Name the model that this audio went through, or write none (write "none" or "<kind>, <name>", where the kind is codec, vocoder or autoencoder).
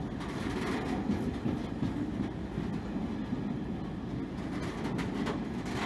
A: none